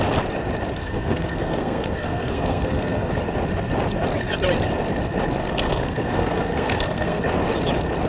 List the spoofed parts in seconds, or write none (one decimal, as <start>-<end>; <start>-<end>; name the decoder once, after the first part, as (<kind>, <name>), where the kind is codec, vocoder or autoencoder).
0.8-3.1 (codec, SNAC); 5.4-7.2